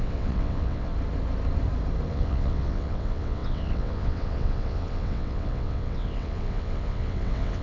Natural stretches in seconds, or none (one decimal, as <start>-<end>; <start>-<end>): 0.9-2.1